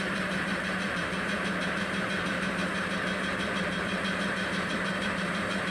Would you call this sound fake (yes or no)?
yes